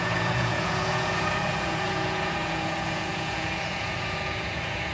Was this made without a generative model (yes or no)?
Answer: no